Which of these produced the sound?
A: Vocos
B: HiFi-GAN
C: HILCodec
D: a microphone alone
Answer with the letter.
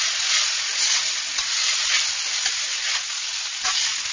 D